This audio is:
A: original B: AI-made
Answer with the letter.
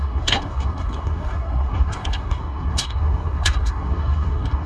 B